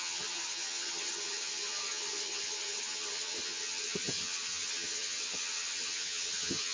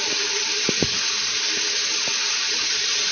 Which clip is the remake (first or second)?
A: first